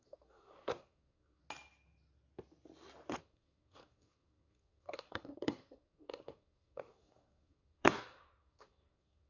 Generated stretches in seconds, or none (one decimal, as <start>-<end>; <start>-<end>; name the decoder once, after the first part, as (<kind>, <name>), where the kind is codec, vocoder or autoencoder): 0.0-1.4 (codec, SNAC); 3.2-9.3